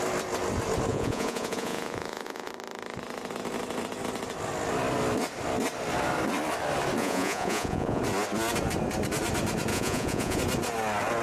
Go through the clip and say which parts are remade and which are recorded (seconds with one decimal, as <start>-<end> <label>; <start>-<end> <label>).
0.0-0.9 recorded; 0.9-2.5 remade; 2.5-7.0 recorded; 7.0-8.0 remade; 8.0-9.7 recorded; 9.7-10.4 remade; 10.4-11.2 recorded